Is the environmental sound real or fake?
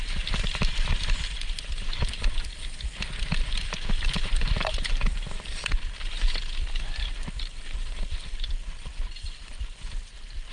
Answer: real